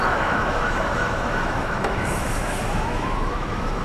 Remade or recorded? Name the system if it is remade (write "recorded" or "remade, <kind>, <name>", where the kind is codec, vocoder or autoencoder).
remade, autoencoder, DAC-VAE